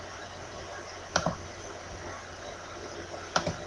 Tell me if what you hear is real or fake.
real